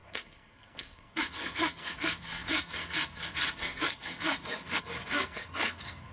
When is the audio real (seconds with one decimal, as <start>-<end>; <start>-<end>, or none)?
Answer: none